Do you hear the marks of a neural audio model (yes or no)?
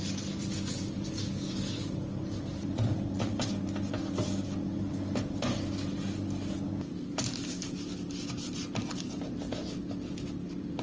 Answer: no